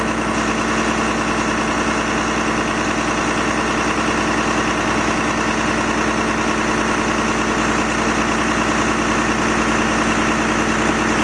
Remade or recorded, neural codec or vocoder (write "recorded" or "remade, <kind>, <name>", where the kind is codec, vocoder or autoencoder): recorded